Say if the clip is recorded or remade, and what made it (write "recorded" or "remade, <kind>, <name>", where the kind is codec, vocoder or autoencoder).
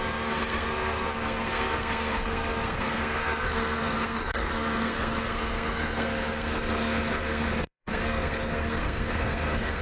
remade, codec, SNAC